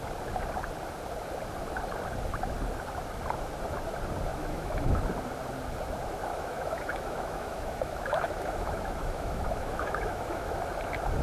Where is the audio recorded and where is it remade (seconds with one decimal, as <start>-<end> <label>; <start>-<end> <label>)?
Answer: 0.0-4.3 recorded; 4.3-5.1 remade; 5.1-6.3 recorded; 6.3-10.6 remade; 10.6-11.2 recorded